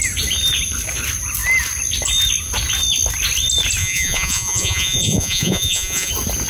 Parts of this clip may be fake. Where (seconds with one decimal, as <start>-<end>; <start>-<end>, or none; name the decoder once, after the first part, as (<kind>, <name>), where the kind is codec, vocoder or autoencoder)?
3.8-6.1 (vocoder, Vocos)